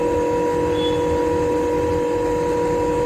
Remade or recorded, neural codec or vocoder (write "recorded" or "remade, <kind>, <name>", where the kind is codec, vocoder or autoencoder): recorded